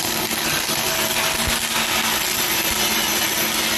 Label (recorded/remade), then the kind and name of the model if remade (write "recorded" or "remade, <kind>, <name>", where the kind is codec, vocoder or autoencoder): recorded